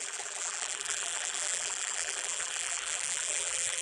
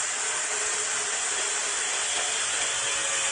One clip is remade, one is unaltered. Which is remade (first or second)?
first